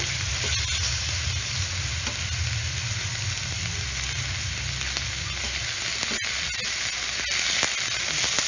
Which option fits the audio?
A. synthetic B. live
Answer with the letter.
B